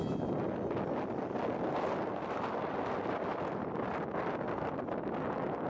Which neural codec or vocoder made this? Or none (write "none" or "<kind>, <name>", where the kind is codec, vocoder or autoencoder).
none